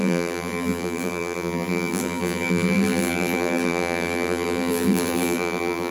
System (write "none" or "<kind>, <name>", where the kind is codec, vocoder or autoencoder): vocoder, BigVGAN v2